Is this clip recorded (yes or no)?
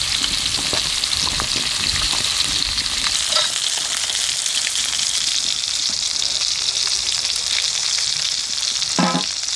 no